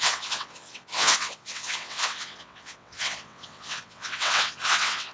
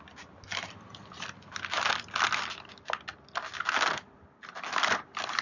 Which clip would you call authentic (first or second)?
second